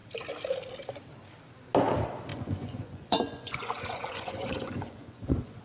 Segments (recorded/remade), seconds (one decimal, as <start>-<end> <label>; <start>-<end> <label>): 0.0-2.3 recorded; 2.3-5.6 remade